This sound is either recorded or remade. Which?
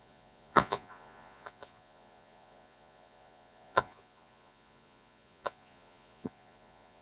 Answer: remade